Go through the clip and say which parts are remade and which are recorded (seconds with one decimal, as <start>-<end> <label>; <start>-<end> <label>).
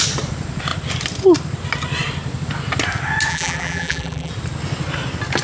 0.0-3.3 recorded; 3.3-4.3 remade; 4.3-5.4 recorded